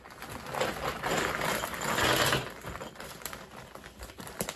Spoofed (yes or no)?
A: no